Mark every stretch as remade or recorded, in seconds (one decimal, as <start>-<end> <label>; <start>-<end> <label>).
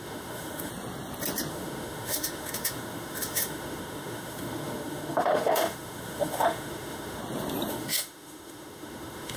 0.0-0.7 remade; 0.7-1.5 recorded; 1.5-7.2 remade; 7.2-7.7 recorded; 7.7-9.4 remade